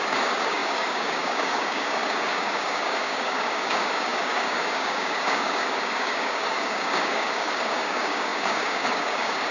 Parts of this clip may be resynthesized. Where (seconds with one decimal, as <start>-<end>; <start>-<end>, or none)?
0.0-9.5